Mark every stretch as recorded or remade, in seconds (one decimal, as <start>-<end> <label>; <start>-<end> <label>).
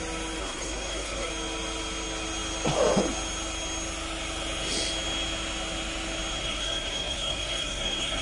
0.0-0.4 recorded; 0.4-1.3 remade; 1.3-6.4 recorded; 6.4-8.2 remade